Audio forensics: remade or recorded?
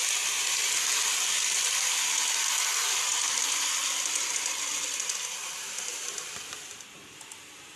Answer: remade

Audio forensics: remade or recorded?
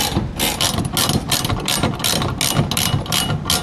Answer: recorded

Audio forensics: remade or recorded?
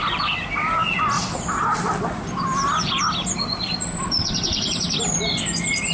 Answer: remade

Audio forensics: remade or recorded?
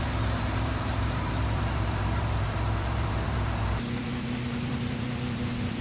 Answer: remade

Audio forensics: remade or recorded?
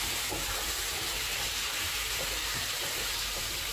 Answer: remade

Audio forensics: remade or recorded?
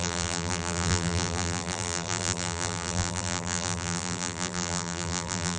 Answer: remade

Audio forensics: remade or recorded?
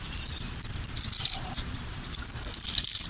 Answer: remade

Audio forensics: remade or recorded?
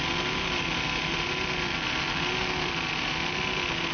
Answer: recorded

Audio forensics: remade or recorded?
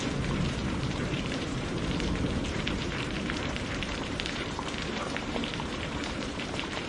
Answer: remade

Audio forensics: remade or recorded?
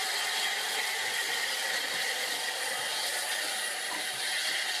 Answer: remade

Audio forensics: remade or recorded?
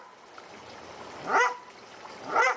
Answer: recorded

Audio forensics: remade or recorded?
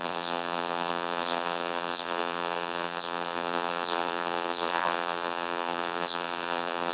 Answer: remade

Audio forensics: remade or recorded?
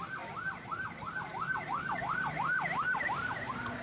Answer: remade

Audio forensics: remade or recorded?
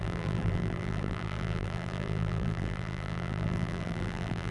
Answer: remade